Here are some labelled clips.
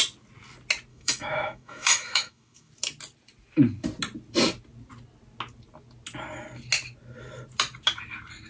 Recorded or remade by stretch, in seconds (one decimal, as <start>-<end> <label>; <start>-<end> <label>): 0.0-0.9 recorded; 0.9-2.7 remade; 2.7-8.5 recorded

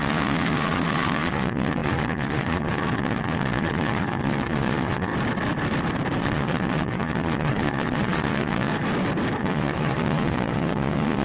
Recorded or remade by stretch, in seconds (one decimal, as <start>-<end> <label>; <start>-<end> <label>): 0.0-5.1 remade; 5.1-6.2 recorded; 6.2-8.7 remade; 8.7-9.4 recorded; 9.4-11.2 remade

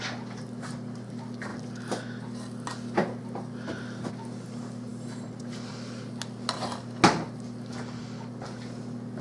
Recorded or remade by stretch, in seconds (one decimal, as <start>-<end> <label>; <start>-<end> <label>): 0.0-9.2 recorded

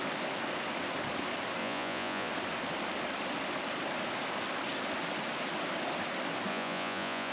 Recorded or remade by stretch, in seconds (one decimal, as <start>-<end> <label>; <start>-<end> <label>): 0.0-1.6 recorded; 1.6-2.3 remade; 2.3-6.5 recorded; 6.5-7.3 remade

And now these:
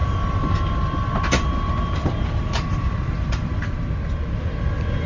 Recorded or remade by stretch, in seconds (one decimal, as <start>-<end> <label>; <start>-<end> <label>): 0.0-5.1 recorded